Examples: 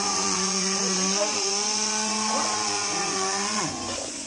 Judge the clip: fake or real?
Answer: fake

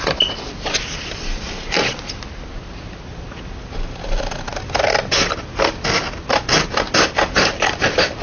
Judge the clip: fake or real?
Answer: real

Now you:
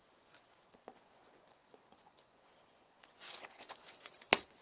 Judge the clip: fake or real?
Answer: fake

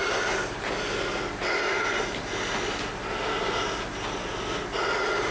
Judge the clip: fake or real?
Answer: real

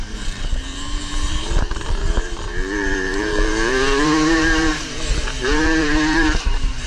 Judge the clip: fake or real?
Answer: fake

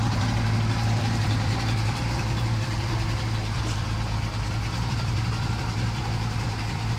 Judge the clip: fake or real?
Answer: fake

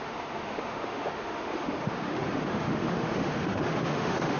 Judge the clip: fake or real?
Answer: fake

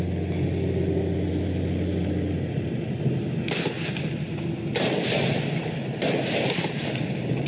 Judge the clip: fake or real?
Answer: real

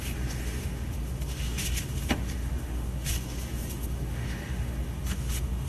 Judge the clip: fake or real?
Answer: fake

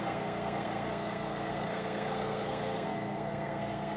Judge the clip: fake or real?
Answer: fake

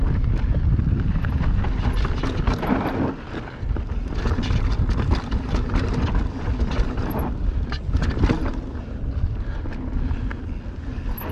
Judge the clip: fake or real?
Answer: real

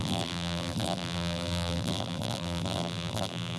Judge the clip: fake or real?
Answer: fake